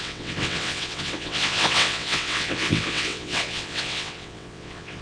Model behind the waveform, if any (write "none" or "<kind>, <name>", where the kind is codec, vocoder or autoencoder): vocoder, WaveNeXt